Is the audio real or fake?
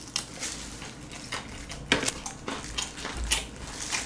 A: real